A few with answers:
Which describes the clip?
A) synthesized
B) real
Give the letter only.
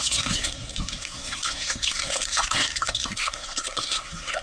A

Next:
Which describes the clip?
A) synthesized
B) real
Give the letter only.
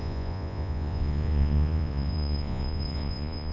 A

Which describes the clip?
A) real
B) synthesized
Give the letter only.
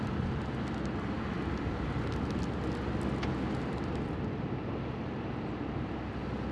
A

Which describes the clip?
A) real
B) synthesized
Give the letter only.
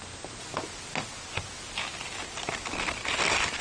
A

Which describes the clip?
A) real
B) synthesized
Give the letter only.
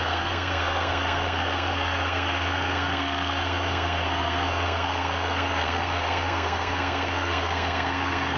B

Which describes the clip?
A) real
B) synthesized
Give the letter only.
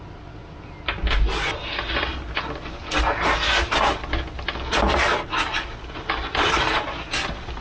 A